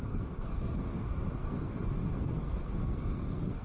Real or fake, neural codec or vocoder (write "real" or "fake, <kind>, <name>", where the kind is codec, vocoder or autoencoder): fake, codec, SNAC